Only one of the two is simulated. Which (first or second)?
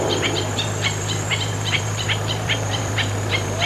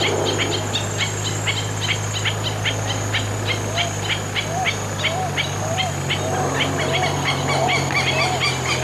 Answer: first